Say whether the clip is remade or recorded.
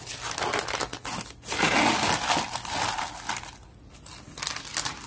recorded